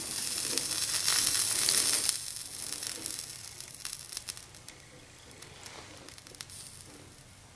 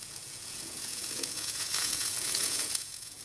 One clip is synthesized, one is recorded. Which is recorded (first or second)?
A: first